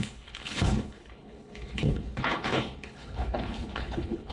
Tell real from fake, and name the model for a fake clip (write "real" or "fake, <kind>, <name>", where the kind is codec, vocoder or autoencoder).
fake, codec, HILCodec